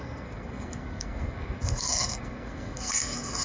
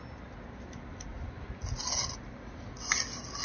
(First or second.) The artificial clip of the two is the first